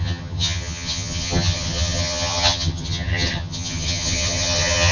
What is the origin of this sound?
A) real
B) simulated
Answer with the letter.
B